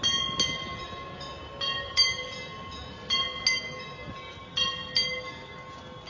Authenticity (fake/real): real